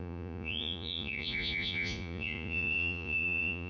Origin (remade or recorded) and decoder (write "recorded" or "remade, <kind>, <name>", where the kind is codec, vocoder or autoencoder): remade, vocoder, Vocos